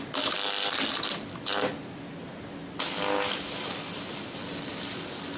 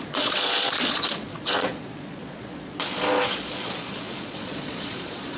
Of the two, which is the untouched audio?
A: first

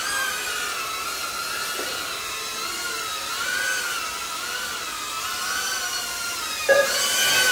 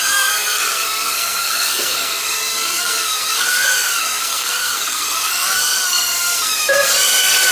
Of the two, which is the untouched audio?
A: first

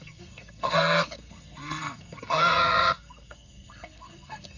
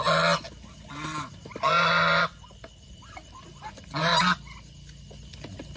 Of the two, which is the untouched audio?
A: second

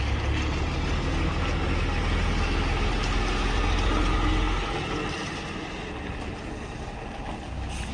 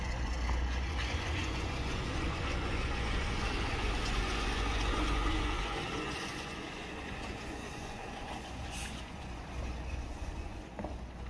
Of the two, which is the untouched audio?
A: first